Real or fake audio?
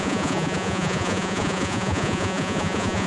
fake